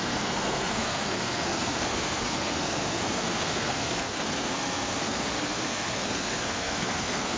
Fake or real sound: fake